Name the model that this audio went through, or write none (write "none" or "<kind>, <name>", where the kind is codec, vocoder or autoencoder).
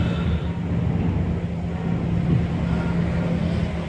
none